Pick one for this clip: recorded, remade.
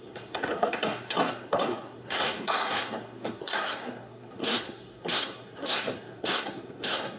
remade